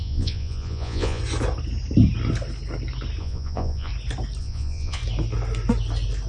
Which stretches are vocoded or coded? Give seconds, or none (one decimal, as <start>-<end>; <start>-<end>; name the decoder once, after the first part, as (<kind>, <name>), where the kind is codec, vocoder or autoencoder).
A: 0.0-1.2 (vocoder, Vocos); 3.2-3.9; 4.4-5.0